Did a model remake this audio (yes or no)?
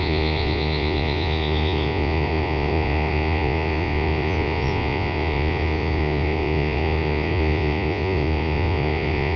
yes